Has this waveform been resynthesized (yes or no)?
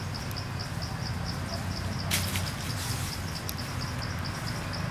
no